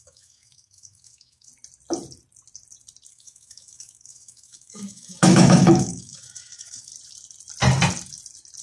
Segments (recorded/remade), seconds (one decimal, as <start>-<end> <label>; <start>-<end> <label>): 0.0-1.5 remade; 1.5-3.1 recorded; 3.1-6.9 remade; 6.9-8.6 recorded